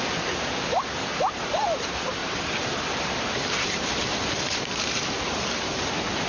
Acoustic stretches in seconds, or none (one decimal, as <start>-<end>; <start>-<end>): 0.0-2.2